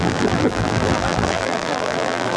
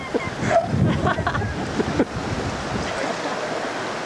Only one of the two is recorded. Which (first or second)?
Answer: second